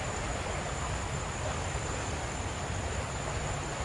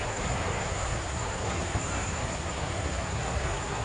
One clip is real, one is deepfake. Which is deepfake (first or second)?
second